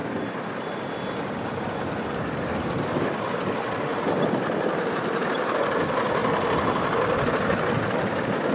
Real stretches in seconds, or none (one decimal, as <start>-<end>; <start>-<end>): 0.0-8.5